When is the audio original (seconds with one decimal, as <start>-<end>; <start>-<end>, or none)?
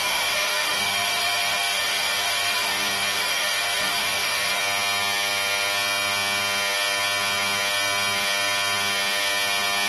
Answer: 4.6-9.9